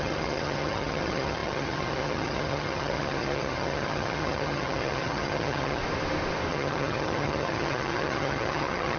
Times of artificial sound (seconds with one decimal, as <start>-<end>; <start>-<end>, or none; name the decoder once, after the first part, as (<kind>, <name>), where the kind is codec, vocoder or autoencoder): 0.0-5.8 (vocoder, HiFi-GAN); 6.5-9.0